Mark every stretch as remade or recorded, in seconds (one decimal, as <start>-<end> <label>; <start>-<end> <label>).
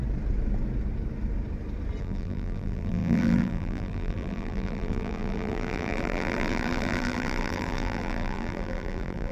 0.0-2.0 recorded; 2.0-9.3 remade